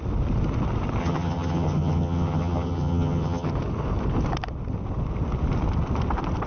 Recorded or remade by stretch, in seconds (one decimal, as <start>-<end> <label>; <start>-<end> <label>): 0.0-1.0 recorded; 1.0-3.5 remade; 3.5-6.5 recorded